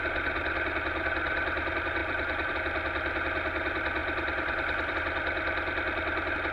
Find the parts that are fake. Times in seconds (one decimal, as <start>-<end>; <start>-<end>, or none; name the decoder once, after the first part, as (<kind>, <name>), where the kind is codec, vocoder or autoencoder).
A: 2.0-2.5 (vocoder, BigVGAN v2); 4.0-4.9